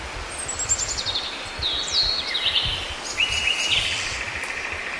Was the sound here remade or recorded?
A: recorded